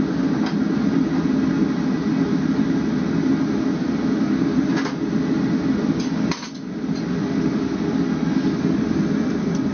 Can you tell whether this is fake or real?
real